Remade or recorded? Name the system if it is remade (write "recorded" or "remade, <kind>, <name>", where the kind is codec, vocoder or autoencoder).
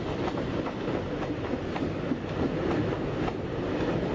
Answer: recorded